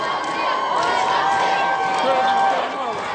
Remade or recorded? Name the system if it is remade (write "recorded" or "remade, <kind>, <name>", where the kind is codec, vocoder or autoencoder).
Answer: recorded